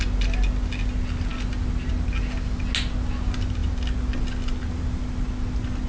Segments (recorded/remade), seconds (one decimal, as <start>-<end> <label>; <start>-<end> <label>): 0.0-5.9 recorded